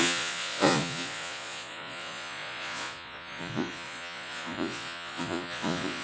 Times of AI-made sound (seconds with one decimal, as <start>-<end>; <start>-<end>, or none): 0.0-6.0